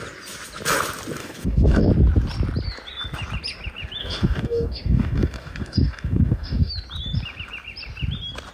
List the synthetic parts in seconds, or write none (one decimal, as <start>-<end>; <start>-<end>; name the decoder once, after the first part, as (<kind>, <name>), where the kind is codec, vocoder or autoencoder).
1.2-1.9 (codec, DAC); 4.0-6.7